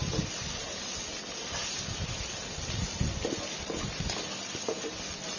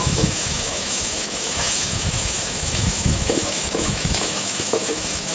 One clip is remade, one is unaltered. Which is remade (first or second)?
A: second